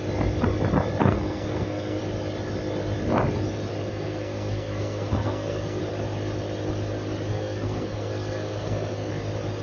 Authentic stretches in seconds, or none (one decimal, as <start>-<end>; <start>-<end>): 0.0-1.0; 2.0-3.9; 5.8-7.3; 9.1-9.6